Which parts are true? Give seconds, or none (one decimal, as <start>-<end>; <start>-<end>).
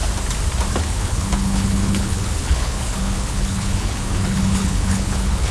0.0-0.8